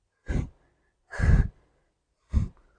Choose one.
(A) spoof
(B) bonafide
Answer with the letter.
B